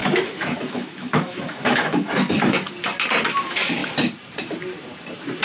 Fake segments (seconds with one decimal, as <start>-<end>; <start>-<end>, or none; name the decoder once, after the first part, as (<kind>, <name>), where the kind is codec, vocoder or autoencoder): 0.0-2.7 (autoencoder, DAC-VAE)